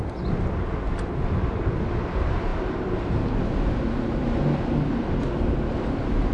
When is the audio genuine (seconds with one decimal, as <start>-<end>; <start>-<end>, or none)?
0.0-6.3